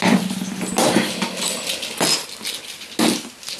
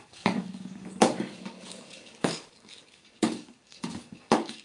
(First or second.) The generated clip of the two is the second